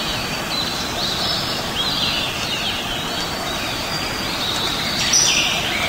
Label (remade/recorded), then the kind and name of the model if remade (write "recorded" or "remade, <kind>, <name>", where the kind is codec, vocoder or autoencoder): recorded